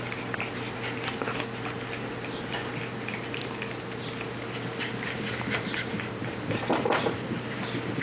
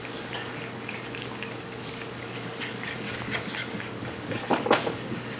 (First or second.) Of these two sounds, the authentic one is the first